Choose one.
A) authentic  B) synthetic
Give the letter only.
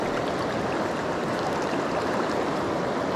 A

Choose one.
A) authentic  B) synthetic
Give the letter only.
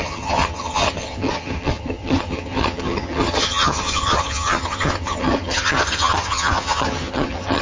B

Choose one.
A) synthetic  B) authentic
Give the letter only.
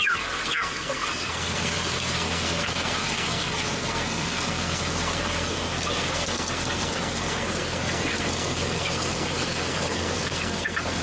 A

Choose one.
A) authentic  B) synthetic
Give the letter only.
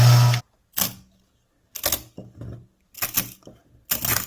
A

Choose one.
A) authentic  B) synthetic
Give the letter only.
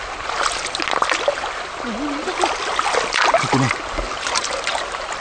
A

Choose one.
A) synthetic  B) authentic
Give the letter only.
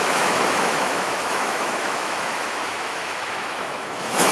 A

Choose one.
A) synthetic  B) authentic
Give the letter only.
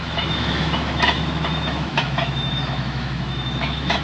A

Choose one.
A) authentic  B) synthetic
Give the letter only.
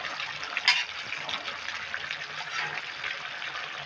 A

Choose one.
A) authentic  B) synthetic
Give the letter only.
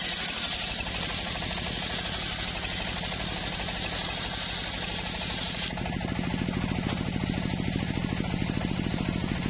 A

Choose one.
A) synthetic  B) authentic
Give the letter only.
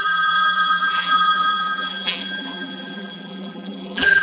A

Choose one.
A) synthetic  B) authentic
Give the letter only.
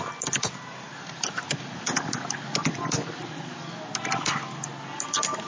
B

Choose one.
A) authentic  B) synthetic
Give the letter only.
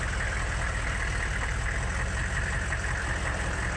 A